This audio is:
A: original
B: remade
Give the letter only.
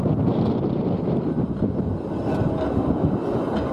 A